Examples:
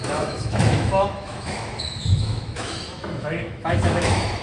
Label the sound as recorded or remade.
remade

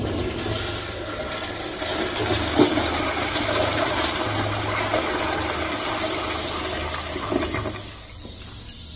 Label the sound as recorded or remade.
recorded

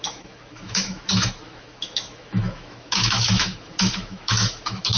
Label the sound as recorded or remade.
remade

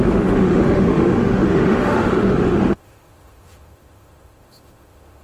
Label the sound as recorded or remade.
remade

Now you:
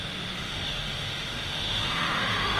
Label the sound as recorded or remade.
remade